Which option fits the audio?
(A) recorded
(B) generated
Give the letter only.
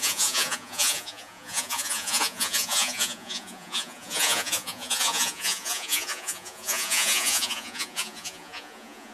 B